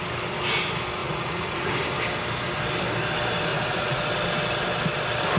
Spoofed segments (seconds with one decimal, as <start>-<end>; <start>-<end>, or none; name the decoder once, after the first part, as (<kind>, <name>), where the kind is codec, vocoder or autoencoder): 1.0-1.7 (vocoder, Vocos); 3.5-4.0

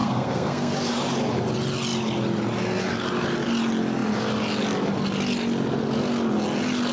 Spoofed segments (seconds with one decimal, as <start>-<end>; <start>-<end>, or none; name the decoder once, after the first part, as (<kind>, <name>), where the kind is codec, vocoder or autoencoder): 0.0-0.7 (codec, SNAC)